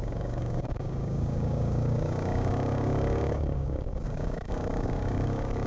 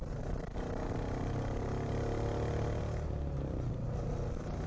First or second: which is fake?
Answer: first